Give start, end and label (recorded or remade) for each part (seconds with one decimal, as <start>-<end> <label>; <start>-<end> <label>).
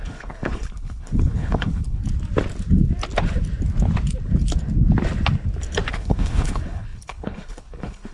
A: 0.0-2.0 remade; 2.0-5.9 recorded; 5.9-8.1 remade